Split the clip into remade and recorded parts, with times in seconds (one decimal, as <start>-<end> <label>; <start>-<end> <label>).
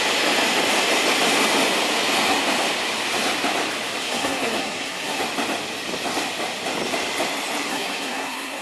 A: 0.0-4.0 recorded; 4.0-5.2 remade; 5.2-7.7 recorded; 7.7-8.6 remade